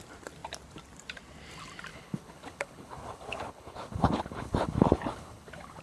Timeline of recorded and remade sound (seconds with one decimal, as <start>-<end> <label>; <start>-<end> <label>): 0.0-1.9 recorded; 1.9-5.8 remade